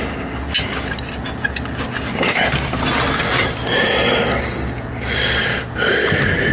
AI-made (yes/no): no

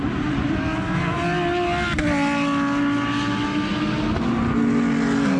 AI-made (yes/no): no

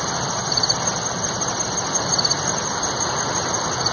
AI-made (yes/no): no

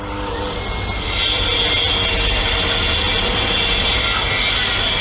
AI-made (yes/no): no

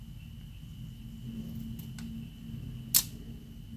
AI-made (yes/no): no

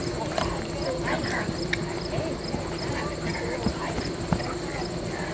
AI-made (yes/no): no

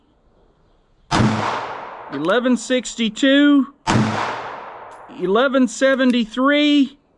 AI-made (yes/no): no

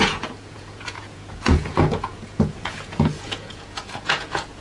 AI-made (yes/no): yes